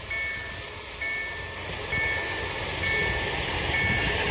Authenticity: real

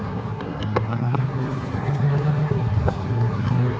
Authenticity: fake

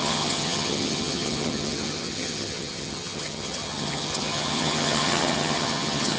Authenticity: fake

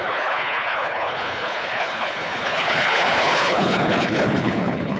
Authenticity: fake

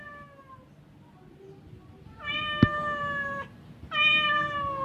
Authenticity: real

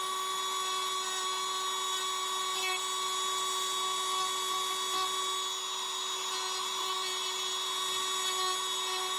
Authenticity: real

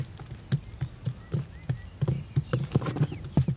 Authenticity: real